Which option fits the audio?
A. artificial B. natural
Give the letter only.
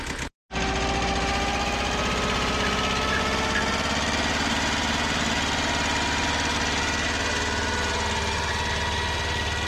B